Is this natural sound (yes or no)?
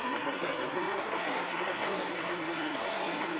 no